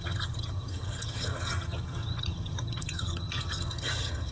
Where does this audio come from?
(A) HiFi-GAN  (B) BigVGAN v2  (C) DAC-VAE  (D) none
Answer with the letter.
A